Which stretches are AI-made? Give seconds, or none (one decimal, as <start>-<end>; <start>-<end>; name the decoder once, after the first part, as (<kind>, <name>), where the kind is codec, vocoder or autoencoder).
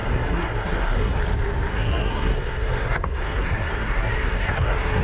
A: 0.0-1.2 (codec, SNAC); 1.7-5.0